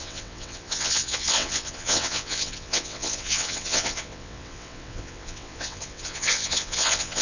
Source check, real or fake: fake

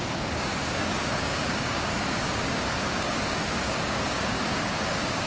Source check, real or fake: fake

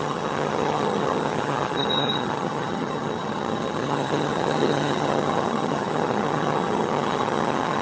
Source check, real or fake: fake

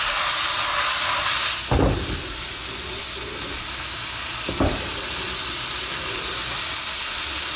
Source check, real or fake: real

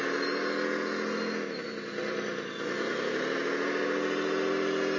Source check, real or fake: real